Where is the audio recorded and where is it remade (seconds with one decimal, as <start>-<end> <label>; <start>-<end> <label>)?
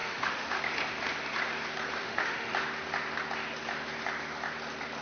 0.0-0.6 remade; 0.6-2.0 recorded; 2.0-2.5 remade; 2.5-5.0 recorded